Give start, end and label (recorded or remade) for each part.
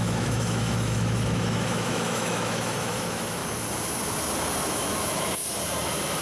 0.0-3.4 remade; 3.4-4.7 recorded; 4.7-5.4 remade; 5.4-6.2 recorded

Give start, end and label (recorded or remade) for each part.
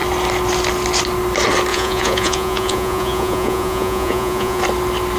0.0-1.7 recorded; 1.7-4.6 remade; 4.6-5.2 recorded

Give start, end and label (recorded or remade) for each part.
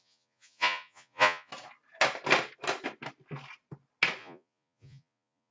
0.0-1.5 remade; 1.5-4.2 recorded; 4.2-5.5 remade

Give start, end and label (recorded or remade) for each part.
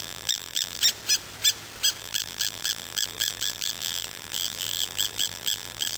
0.0-0.8 remade; 0.8-2.0 recorded; 2.0-6.0 remade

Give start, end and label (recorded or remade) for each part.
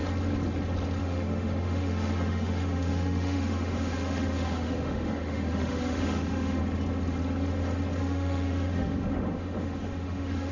0.0-1.0 recorded; 1.0-6.6 remade; 6.6-8.0 recorded; 8.0-10.5 remade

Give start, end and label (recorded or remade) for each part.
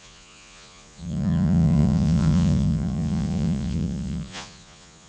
0.0-5.1 remade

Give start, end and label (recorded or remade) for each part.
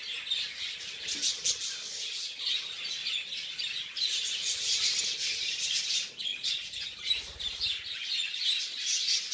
0.0-3.0 recorded; 3.0-3.6 remade; 3.6-6.3 recorded; 6.3-6.8 remade; 6.8-9.3 recorded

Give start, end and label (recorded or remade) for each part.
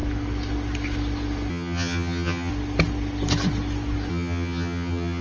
0.0-1.5 recorded; 1.5-2.5 remade; 2.5-4.1 recorded; 4.1-5.2 remade